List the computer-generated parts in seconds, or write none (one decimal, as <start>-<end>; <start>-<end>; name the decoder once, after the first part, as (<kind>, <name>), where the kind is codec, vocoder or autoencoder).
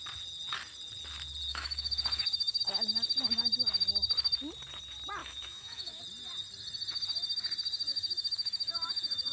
1.5-2.6 (autoencoder, DAC-VAE); 5.2-6.0; 7.9-9.3